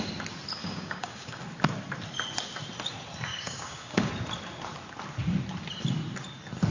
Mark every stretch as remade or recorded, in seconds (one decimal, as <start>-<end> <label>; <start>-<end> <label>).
0.0-0.6 recorded; 0.6-1.4 remade; 1.4-3.3 recorded; 3.3-4.1 remade; 4.1-6.7 recorded